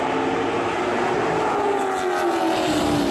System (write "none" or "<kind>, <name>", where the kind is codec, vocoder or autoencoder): none